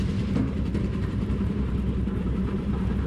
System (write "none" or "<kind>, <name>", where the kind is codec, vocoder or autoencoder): vocoder, BigVGAN v2